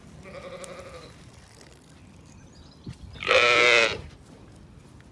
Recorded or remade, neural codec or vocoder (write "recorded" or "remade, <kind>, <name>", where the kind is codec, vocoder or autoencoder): remade, vocoder, BigVGAN v2